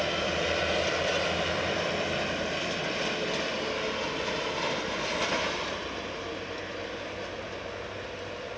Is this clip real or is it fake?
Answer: real